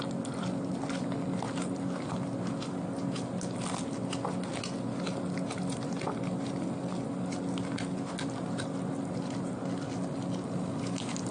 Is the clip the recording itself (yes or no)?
yes